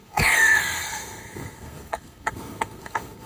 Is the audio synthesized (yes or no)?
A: yes